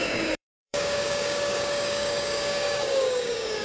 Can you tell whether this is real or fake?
fake